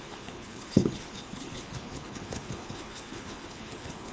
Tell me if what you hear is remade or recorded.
remade